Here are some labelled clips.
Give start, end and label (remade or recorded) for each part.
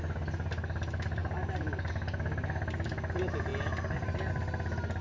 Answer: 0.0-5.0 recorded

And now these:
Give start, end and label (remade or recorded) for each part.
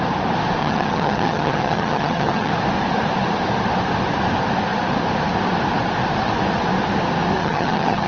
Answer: 0.0-0.6 recorded; 0.6-2.5 remade; 2.5-7.4 recorded; 7.4-8.1 remade